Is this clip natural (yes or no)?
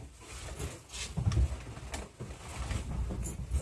yes